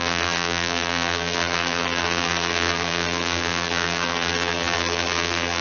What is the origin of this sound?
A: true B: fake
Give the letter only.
B